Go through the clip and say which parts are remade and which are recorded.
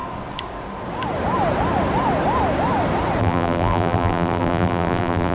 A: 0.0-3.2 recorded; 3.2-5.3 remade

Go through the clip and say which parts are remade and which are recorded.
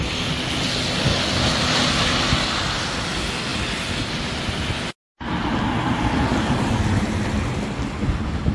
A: 0.0-8.5 recorded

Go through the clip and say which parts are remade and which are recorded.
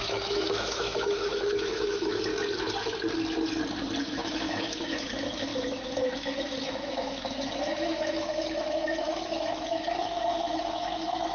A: 0.0-2.3 remade; 2.3-4.0 recorded; 4.0-11.3 remade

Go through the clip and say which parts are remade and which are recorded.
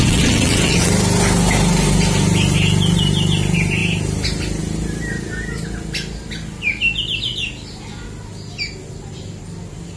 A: 0.0-0.9 remade; 0.9-10.0 recorded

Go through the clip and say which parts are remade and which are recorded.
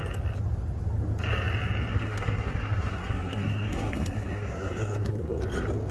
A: 0.0-1.9 recorded; 1.9-5.4 remade; 5.4-5.9 recorded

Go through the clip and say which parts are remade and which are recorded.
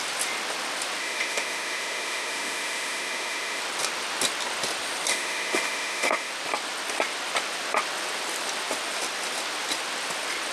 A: 0.0-1.0 recorded; 1.0-3.6 remade; 3.6-5.1 recorded; 5.1-6.3 remade; 6.3-10.5 recorded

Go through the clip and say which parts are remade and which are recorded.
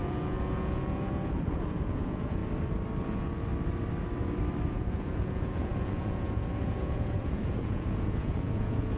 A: 0.0-2.4 remade; 2.4-3.0 recorded; 3.0-3.5 remade; 3.5-4.7 recorded; 4.7-9.0 remade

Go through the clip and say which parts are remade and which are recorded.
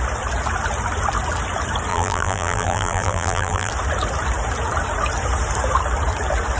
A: 0.0-1.9 recorded; 1.9-3.7 remade; 3.7-6.6 recorded